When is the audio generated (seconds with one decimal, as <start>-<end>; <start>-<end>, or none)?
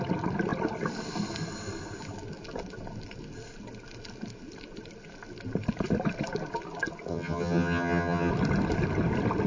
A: 7.1-8.3